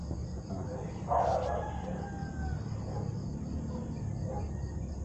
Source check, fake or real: real